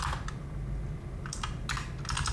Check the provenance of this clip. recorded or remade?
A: recorded